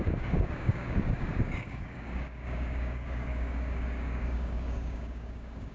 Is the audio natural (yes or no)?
no